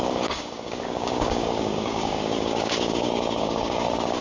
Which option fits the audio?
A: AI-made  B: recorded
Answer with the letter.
A